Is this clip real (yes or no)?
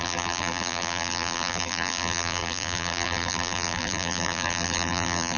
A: no